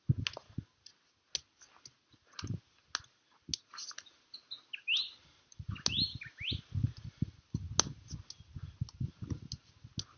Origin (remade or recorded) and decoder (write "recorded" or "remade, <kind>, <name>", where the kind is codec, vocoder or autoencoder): recorded